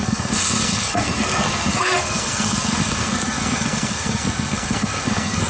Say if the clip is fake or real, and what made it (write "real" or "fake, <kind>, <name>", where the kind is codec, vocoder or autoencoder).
fake, codec, SNAC